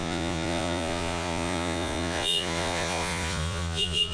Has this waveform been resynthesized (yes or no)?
yes